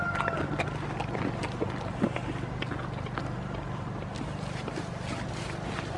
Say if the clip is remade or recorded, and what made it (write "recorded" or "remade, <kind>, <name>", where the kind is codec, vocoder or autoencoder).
recorded